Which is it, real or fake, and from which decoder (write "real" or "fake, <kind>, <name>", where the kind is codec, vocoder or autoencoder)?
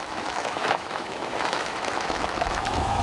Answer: fake, autoencoder, DAC-VAE